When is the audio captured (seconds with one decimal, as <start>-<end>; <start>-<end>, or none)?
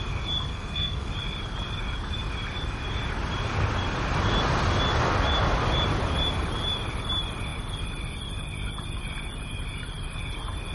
0.0-0.5; 1.1-10.7